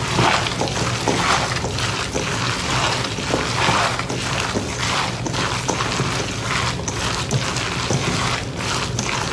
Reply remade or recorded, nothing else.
recorded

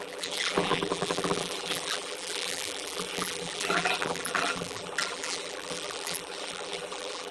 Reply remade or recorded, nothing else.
remade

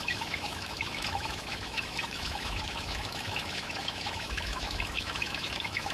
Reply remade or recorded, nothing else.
remade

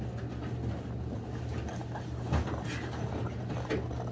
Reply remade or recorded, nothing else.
recorded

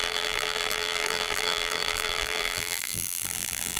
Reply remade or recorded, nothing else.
remade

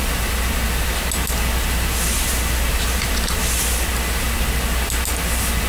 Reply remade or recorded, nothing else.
recorded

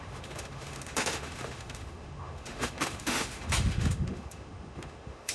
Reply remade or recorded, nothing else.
remade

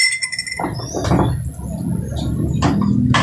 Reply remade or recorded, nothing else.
recorded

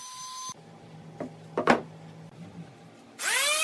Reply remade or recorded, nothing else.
recorded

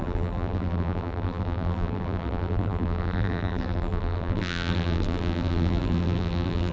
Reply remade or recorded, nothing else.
remade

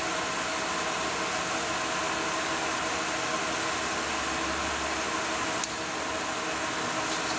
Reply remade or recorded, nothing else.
recorded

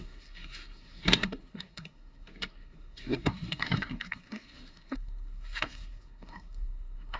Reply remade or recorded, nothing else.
remade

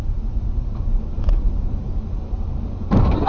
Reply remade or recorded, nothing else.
remade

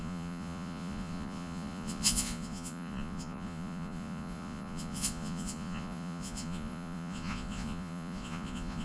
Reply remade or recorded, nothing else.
remade